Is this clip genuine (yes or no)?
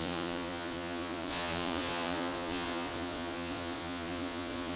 no